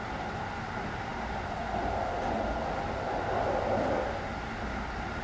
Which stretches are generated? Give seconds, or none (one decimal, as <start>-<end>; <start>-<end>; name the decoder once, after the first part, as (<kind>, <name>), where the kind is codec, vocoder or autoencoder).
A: none